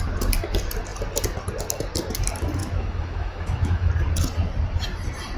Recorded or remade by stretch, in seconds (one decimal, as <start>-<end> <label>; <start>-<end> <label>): 0.0-2.6 recorded; 2.6-3.9 remade; 3.9-5.4 recorded